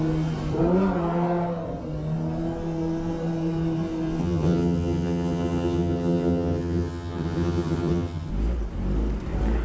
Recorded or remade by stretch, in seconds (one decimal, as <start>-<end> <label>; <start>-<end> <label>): 0.0-4.2 recorded; 4.2-8.3 remade; 8.3-9.6 recorded